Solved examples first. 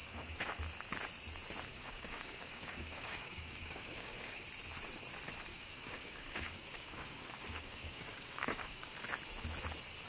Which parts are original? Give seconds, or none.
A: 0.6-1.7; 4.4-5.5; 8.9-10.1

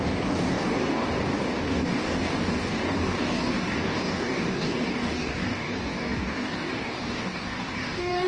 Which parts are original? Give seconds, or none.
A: none

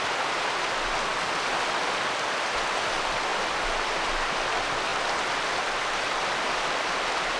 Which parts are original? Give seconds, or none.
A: 0.0-7.4

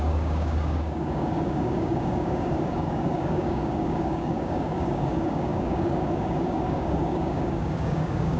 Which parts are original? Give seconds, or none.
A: none

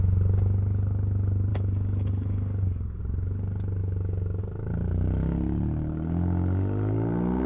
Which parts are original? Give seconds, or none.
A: 0.0-1.5; 3.0-7.5

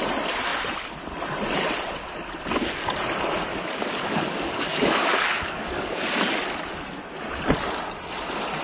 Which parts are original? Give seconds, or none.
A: 0.0-3.5; 6.4-8.6

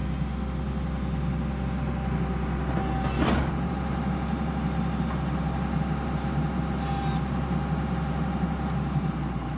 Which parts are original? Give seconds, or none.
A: 0.0-9.6

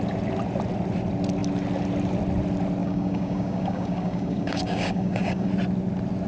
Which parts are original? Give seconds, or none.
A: 0.0-2.8; 5.5-6.3